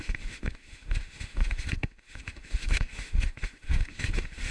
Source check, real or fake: fake